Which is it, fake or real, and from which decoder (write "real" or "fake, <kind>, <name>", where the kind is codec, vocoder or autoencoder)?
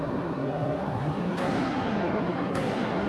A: fake, codec, SNAC